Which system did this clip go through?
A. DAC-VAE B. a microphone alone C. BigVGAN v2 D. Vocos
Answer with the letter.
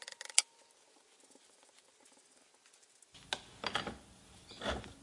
B